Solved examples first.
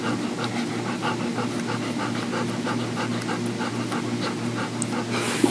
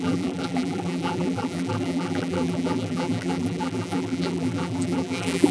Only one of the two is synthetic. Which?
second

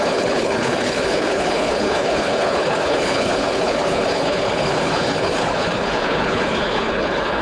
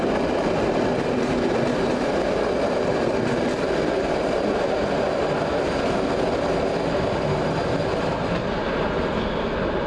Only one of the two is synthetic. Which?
first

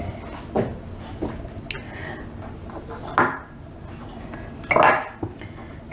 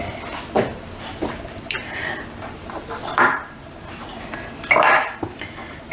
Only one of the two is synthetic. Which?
second